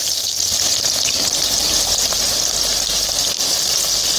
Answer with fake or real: real